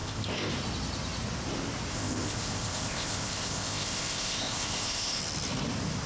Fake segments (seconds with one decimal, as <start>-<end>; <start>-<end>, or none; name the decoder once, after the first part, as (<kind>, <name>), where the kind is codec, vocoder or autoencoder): 0.0-0.5 (codec, ZipCodec); 1.9-5.2